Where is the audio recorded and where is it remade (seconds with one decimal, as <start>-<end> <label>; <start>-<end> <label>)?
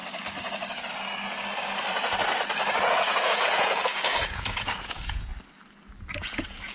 0.0-3.0 recorded; 3.0-5.3 remade; 5.3-6.1 recorded; 6.1-6.7 remade